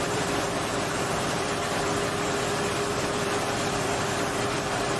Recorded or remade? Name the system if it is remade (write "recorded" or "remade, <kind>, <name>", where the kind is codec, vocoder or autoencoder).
remade, vocoder, BigVGAN v2